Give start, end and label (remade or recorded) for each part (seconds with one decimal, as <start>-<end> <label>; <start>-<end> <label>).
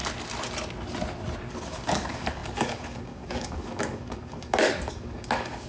0.0-1.5 recorded; 1.5-5.7 remade